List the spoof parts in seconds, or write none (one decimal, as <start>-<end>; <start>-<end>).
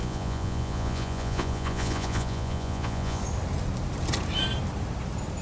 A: 0.0-3.2